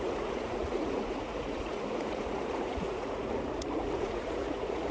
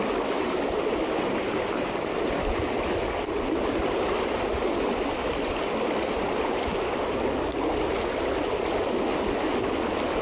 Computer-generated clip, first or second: first